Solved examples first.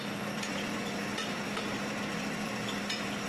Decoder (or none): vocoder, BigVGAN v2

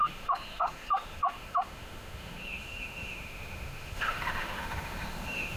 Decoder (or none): autoencoder, DAC-VAE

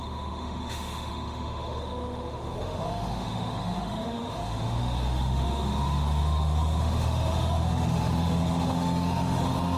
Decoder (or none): autoencoder, DAC-VAE